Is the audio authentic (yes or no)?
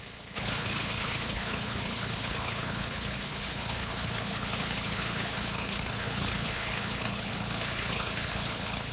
no